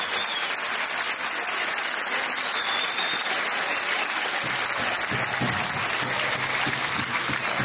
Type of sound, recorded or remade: recorded